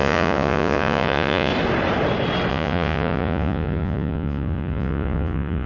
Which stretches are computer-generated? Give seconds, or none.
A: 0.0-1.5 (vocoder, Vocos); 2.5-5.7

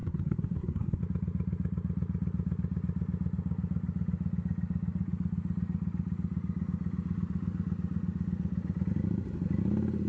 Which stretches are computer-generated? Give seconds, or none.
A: 0.0-1.0 (codec, SNAC)

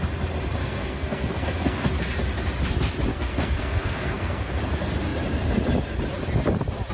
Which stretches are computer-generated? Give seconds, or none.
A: 0.6-1.9 (codec, SNAC); 3.1-4.6

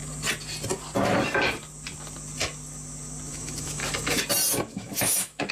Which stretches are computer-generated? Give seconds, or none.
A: 3.3-3.8 (autoencoder, DAC-VAE); 4.6-5.5

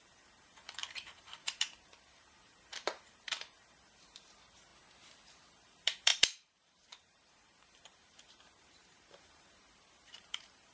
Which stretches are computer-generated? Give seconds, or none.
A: 0.0-4.7 (vocoder, BigVGAN v2); 5.3-10.7

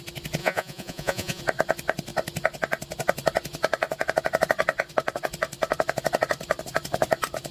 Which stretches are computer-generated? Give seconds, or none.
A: 0.4-1.4 (vocoder, Vocos)